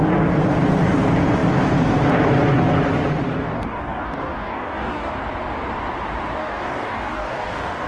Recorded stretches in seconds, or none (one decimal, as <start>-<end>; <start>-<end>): 0.0-3.4; 5.1-6.4